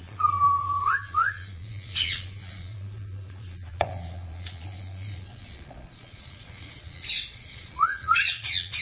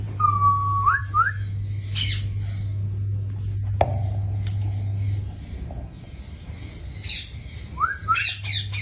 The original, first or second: second